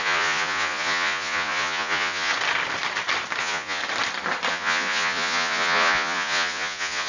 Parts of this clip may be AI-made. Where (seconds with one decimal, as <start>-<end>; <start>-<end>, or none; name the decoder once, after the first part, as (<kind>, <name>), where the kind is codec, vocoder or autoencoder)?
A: 0.0-2.3 (vocoder, Vocos); 3.4-3.8; 4.5-7.1